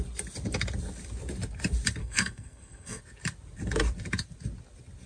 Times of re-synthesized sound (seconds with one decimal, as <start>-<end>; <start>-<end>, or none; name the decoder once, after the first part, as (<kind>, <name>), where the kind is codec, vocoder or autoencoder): 2.0-3.0 (codec, SNAC)